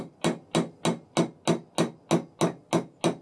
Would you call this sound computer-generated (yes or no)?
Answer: no